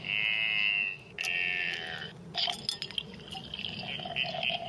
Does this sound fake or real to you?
real